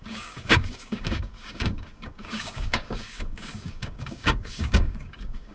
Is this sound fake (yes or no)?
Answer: yes